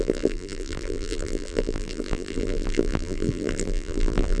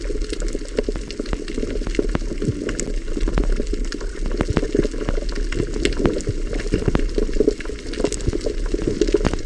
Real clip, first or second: second